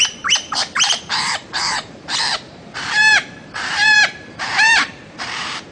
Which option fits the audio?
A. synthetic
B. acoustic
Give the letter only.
A